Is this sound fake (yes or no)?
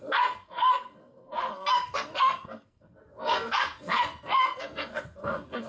yes